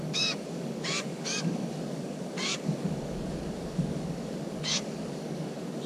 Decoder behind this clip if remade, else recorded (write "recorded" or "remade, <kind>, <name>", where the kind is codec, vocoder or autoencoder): remade, codec, DAC